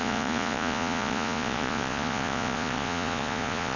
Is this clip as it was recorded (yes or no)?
no